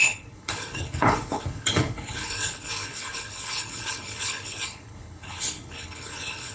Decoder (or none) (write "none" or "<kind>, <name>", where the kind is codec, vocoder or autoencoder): codec, HILCodec